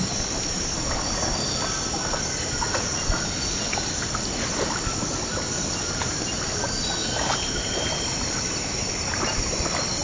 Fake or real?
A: real